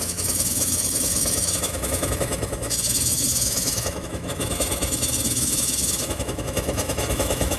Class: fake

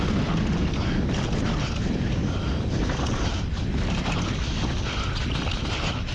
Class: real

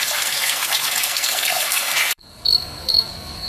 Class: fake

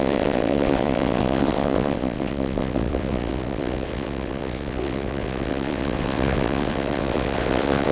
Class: fake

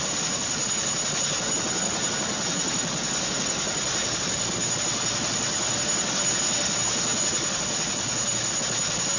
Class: real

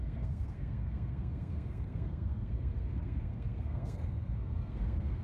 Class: fake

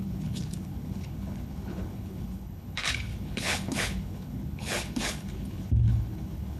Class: fake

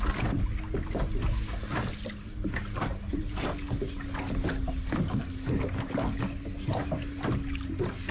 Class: real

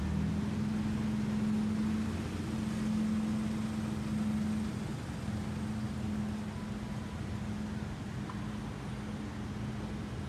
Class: real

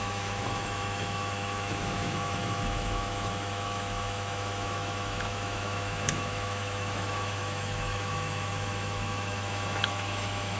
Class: fake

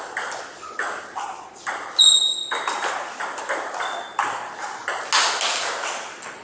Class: real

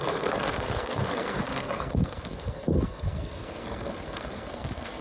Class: fake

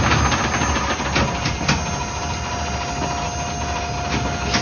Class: real